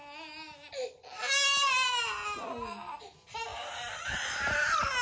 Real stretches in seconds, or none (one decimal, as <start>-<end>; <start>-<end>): 0.0-3.0